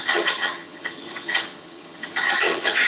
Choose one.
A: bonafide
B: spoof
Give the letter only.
B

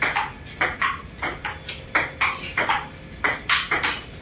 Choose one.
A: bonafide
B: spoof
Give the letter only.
A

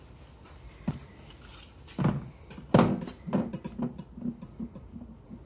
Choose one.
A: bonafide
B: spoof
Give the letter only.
A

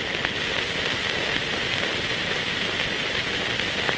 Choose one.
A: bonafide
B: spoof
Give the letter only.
A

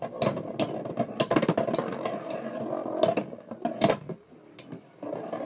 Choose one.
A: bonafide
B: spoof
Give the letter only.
A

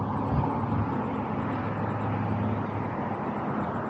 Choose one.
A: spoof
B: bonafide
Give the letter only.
B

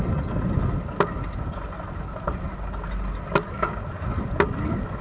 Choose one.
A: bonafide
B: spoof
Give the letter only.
A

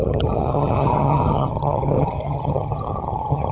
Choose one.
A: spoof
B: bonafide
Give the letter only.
A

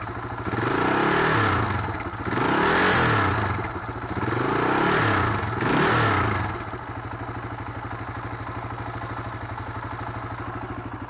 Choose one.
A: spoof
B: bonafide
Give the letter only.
B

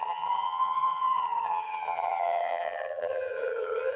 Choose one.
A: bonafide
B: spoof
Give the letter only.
B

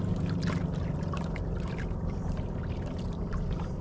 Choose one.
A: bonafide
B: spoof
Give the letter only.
A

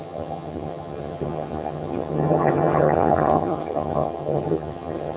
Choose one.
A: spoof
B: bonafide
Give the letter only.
A